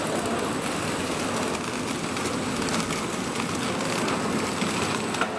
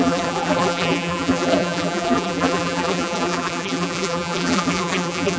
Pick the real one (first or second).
first